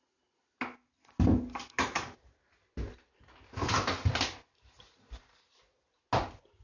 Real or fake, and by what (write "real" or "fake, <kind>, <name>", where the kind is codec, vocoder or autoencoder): real